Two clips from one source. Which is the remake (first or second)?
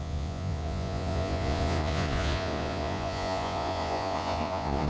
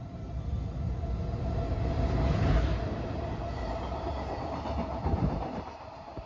first